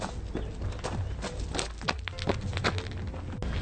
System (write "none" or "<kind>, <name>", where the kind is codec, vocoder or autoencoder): none